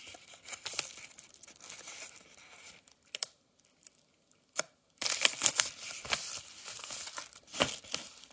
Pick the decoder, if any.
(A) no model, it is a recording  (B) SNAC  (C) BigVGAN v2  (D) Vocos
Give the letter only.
A